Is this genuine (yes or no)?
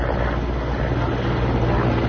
yes